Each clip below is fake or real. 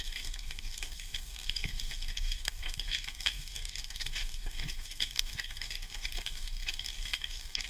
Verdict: fake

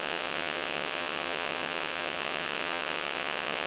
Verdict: fake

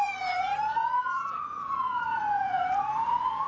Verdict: fake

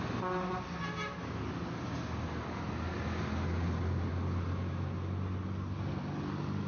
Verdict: real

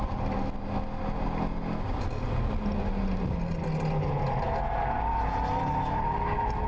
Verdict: real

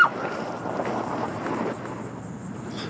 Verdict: real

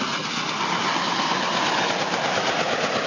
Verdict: real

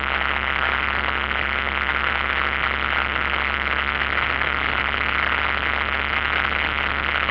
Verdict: real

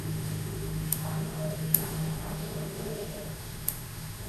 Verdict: fake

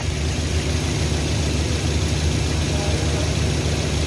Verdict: real